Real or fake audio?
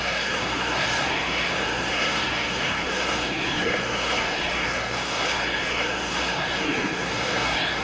fake